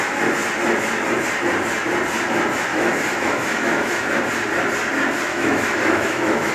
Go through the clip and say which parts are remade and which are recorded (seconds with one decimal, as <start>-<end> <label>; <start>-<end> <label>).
0.0-2.7 recorded; 2.7-4.2 remade; 4.2-5.3 recorded; 5.3-6.5 remade